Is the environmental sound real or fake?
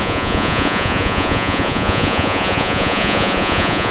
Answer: fake